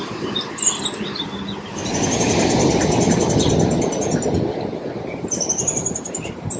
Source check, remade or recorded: recorded